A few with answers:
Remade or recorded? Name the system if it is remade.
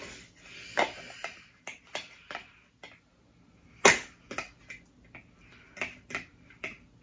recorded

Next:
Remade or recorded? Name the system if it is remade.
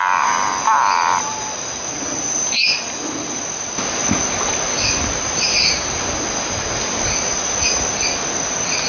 recorded